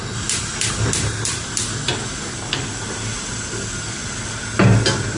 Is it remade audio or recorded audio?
recorded